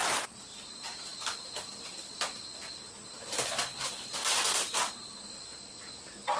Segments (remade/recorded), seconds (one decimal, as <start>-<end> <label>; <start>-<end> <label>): 0.0-6.4 recorded